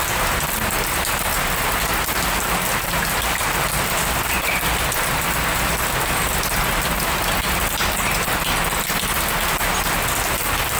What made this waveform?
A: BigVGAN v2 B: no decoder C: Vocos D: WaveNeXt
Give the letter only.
B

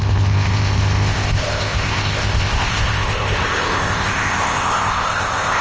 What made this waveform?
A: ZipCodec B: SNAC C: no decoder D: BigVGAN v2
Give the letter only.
A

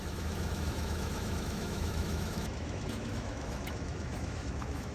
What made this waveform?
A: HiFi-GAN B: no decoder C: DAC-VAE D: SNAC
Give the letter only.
C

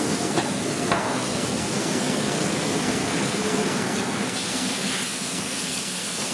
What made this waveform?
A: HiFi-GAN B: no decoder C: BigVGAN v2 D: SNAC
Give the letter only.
D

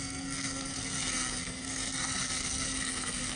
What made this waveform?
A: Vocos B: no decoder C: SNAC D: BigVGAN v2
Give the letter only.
C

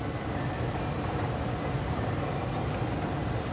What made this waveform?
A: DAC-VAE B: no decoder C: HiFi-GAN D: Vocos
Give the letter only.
B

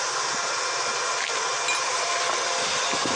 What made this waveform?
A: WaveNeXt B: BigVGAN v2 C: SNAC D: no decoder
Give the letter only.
D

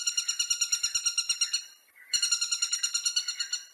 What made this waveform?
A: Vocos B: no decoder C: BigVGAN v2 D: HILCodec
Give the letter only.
C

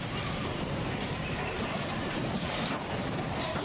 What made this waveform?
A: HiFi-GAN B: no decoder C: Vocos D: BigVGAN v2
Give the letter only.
D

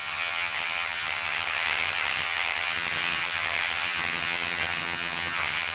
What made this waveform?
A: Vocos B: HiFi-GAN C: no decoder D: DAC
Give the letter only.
B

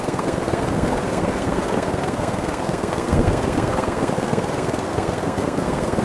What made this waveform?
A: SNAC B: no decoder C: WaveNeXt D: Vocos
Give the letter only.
A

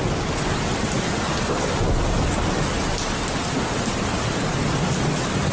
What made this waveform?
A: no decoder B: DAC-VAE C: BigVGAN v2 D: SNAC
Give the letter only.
A